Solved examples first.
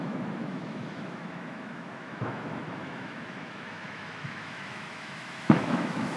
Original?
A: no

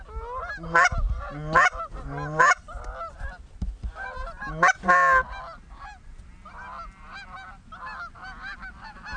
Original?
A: yes